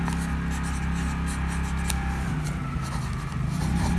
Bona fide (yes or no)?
yes